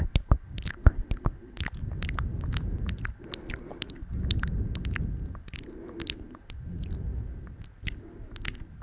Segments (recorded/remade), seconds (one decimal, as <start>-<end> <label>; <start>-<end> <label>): 0.0-8.8 recorded